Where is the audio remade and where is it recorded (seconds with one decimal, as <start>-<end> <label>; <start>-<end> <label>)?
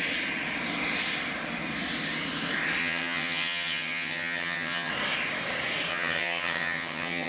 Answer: 0.0-2.8 recorded; 2.8-4.9 remade; 4.9-5.9 recorded; 5.9-7.3 remade